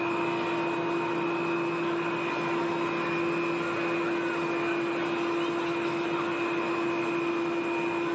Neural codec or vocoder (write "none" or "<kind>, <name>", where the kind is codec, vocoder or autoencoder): none